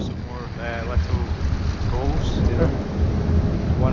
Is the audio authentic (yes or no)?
yes